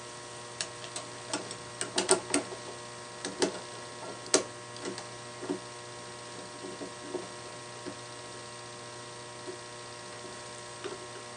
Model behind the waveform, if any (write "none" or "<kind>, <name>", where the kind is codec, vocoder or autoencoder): none